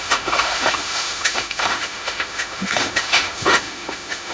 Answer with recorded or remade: remade